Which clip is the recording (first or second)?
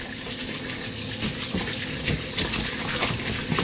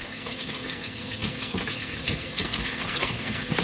first